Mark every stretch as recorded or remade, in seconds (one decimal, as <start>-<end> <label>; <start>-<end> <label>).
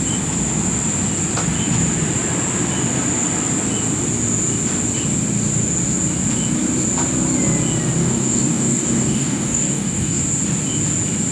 0.0-8.0 recorded; 8.0-10.2 remade; 10.2-11.3 recorded